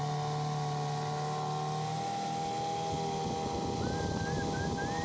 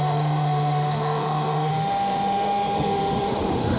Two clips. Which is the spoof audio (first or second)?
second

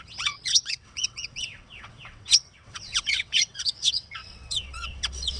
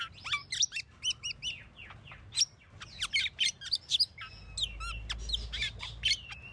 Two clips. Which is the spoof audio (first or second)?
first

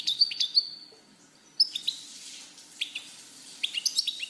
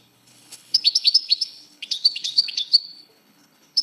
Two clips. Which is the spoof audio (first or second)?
second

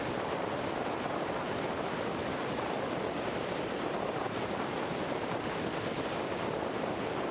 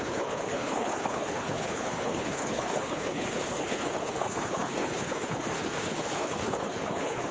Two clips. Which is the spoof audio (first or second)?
second